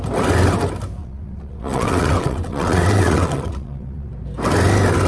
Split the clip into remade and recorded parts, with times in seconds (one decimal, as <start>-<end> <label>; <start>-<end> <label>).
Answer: 0.0-1.0 recorded; 1.0-4.1 remade; 4.1-5.1 recorded

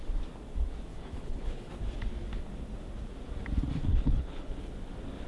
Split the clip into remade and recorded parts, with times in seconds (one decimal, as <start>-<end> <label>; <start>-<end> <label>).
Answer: 0.0-0.9 recorded; 0.9-1.8 remade; 1.8-3.9 recorded; 3.9-4.7 remade; 4.7-5.3 recorded